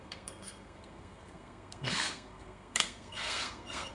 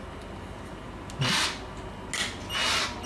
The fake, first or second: first